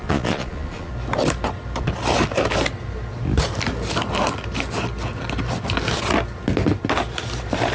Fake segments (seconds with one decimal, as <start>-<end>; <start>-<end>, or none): 0.0-0.9